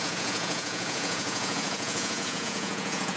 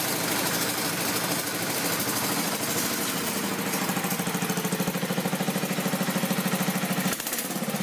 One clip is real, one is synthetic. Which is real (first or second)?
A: second